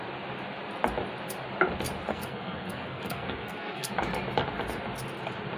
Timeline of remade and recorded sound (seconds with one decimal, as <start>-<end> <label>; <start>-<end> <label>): 0.0-2.1 recorded; 2.1-3.9 remade; 3.9-5.6 recorded